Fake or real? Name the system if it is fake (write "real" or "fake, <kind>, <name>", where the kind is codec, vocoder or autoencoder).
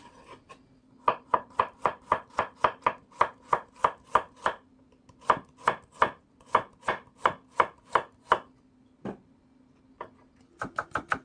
real